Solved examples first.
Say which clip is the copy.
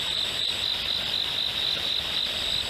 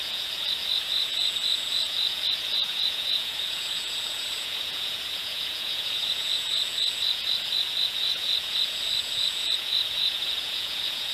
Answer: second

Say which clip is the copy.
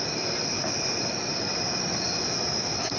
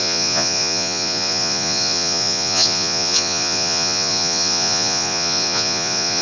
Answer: second